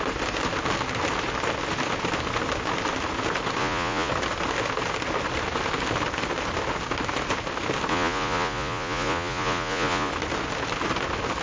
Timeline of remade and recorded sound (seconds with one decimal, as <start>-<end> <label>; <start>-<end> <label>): 0.0-3.6 recorded; 3.6-4.1 remade; 4.1-7.9 recorded; 7.9-10.1 remade; 10.1-11.4 recorded